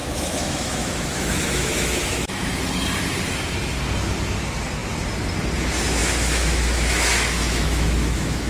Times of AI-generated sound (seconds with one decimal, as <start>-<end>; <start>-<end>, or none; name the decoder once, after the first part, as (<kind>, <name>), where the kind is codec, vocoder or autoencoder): 0.0-2.5 (autoencoder, DAC-VAE); 6.0-8.5